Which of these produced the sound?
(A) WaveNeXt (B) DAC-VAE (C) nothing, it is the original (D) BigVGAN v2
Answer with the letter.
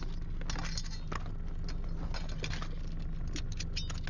C